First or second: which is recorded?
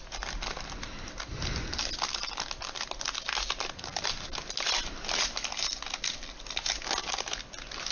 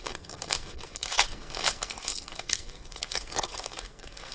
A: first